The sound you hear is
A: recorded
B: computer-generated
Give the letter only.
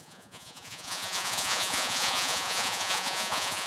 B